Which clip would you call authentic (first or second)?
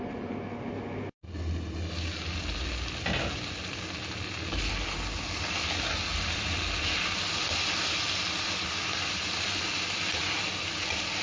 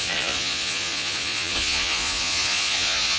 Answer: first